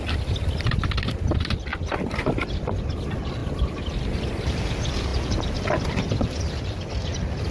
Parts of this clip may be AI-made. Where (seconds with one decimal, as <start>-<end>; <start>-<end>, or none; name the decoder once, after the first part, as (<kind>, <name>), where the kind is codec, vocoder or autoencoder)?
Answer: none